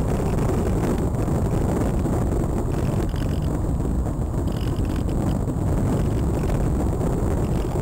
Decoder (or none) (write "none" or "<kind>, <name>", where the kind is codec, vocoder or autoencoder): none